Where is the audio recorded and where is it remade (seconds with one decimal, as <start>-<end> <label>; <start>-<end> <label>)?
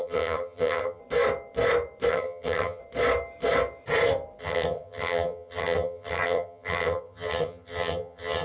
0.0-1.0 remade; 1.0-2.1 recorded; 2.1-2.8 remade; 2.8-4.4 recorded; 4.4-8.4 remade